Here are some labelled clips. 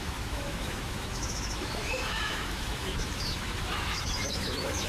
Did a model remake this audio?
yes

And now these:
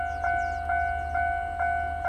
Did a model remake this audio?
no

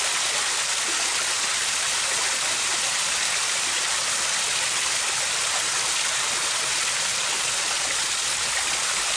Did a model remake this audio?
no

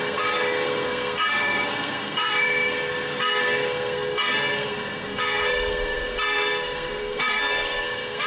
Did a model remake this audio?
yes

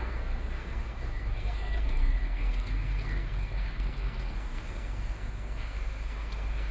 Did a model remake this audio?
yes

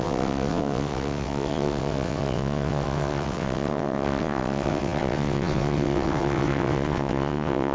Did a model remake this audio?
yes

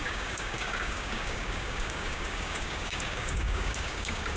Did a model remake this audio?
yes